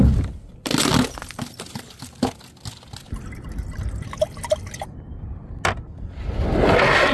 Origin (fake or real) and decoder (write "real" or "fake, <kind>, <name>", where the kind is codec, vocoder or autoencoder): real